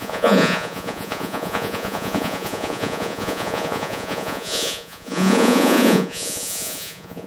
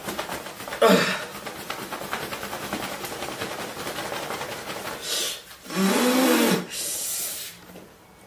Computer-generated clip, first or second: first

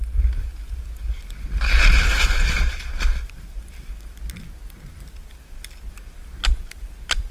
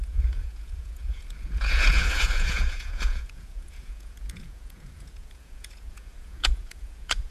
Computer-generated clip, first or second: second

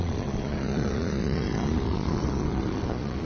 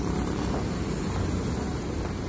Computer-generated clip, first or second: first